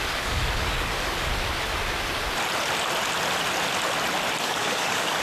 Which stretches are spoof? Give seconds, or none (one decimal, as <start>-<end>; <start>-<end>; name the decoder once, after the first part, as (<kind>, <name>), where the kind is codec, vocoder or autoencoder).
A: 0.0-1.3 (codec, DAC); 4.4-5.2